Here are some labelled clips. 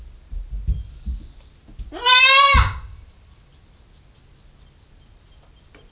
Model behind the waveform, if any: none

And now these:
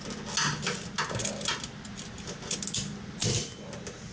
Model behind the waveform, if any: none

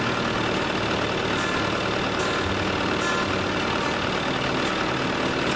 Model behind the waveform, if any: none